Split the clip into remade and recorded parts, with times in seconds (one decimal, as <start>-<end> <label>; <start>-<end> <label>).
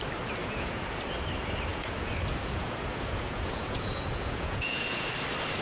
0.0-0.4 recorded; 0.4-1.0 remade; 1.0-1.7 recorded; 1.7-5.1 remade; 5.1-5.6 recorded